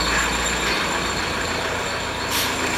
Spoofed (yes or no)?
yes